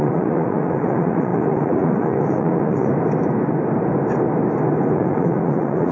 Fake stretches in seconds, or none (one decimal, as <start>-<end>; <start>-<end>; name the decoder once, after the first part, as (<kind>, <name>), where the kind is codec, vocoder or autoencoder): 0.0-2.9 (vocoder, Vocos); 4.9-5.9